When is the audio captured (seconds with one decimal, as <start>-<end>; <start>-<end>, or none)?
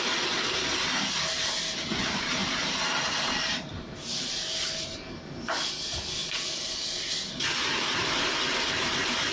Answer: 0.0-2.4; 4.6-9.3